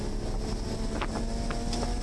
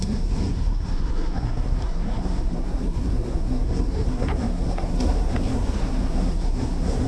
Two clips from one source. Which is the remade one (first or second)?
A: second